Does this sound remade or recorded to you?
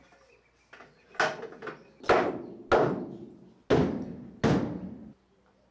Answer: recorded